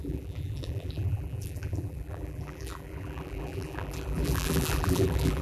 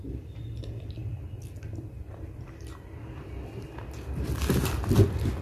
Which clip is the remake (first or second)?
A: first